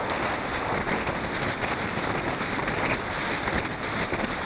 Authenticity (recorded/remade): remade